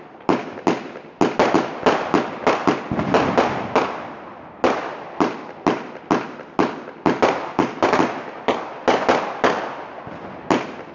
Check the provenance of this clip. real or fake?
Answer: real